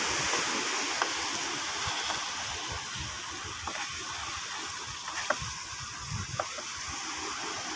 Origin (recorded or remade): recorded